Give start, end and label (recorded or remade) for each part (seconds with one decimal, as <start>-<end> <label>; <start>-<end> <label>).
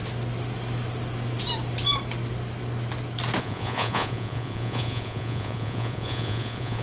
0.0-3.4 recorded; 3.4-6.8 remade